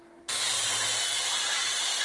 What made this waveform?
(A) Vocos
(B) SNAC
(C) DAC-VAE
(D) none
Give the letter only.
D